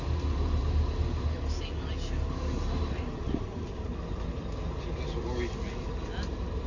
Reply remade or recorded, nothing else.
recorded